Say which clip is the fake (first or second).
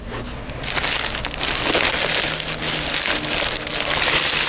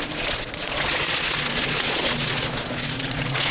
second